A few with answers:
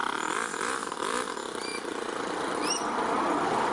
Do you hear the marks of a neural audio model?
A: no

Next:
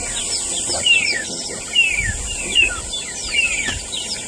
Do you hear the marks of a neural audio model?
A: no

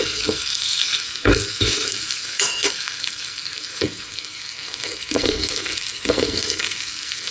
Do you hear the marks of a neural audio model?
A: yes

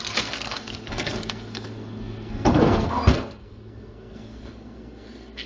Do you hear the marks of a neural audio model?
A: yes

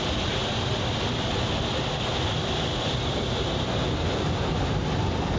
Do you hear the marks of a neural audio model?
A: no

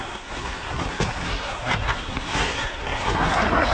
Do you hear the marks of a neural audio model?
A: yes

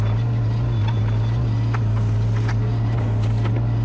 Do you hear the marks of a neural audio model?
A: no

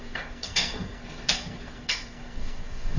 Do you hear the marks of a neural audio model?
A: yes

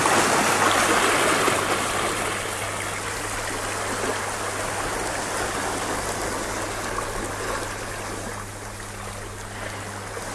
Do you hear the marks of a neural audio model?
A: no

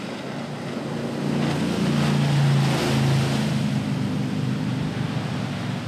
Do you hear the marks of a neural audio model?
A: no